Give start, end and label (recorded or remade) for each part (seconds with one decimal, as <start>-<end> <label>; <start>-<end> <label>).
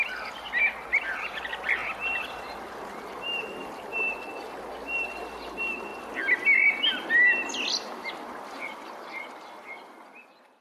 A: 0.0-0.9 recorded; 0.9-1.4 remade; 1.4-10.6 recorded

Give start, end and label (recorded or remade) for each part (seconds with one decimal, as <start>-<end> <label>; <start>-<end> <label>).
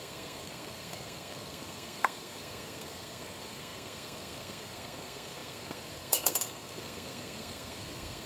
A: 0.0-8.3 remade